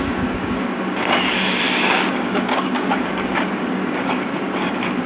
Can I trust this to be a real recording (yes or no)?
no